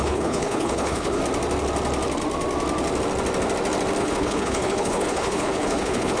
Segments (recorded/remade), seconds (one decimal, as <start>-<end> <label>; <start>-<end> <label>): 0.0-1.2 remade; 1.2-4.0 recorded; 4.0-6.2 remade